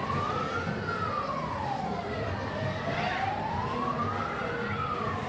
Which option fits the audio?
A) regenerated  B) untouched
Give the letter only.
B